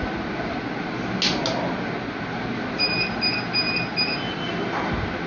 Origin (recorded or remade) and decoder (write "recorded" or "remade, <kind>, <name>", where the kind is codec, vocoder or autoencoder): recorded